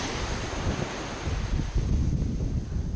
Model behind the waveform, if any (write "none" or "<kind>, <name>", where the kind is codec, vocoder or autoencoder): vocoder, BigVGAN v2